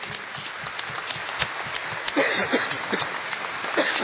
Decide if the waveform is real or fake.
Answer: real